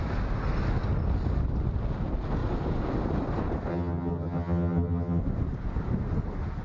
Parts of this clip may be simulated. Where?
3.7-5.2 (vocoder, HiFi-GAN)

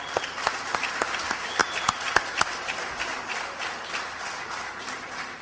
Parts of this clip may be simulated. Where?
none

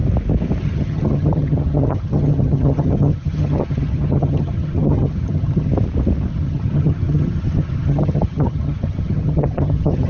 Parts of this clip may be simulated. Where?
0.6-5.7 (vocoder, HiFi-GAN); 6.3-10.1

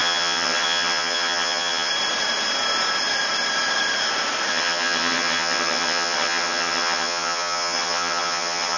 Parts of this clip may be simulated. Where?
0.0-1.9 (vocoder, HiFi-GAN); 4.5-8.8

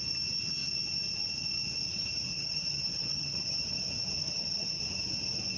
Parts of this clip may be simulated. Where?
2.3-3.6 (vocoder, HiFi-GAN); 4.2-4.8